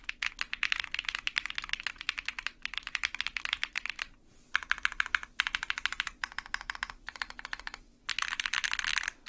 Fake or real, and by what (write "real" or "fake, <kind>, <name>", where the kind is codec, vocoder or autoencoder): real